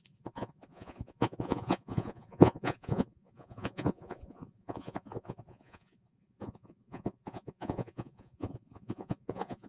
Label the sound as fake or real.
fake